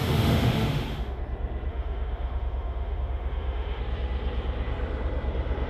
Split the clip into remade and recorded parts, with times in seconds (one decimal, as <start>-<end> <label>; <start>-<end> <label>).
0.0-1.2 remade; 1.2-1.7 recorded; 1.7-3.8 remade; 3.8-5.7 recorded